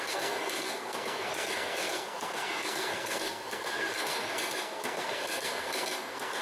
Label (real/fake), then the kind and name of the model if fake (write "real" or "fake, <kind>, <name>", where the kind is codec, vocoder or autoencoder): fake, codec, SNAC